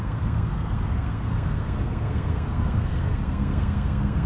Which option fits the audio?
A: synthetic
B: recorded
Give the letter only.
A